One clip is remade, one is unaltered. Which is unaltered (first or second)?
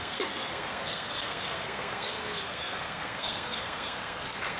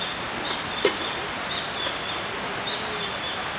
second